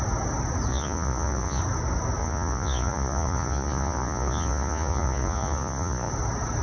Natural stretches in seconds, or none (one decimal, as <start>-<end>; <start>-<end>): 0.0-0.7; 1.6-2.2; 6.1-6.6